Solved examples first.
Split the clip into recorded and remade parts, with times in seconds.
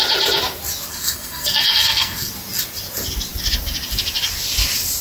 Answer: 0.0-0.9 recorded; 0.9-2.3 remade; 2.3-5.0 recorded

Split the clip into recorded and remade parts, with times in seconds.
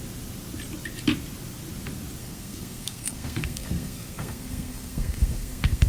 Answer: 0.0-2.2 recorded; 2.2-5.9 remade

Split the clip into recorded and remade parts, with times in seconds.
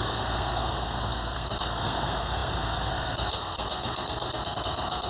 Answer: 0.0-5.1 remade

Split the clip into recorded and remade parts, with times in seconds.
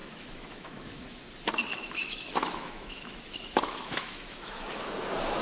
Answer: 0.0-1.2 remade; 1.2-1.7 recorded; 1.7-4.9 remade; 4.9-5.4 recorded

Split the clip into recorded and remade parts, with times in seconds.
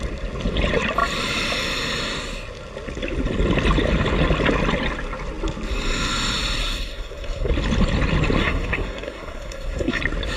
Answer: 0.0-6.6 recorded; 6.6-7.5 remade; 7.5-8.4 recorded; 8.4-10.0 remade; 10.0-10.4 recorded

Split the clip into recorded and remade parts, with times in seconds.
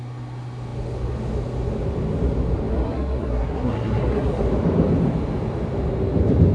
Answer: 0.0-2.7 recorded; 2.7-4.4 remade; 4.4-6.5 recorded